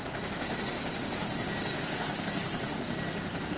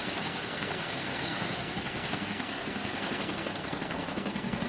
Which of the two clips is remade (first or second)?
second